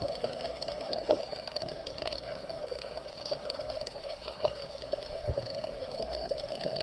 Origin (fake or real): fake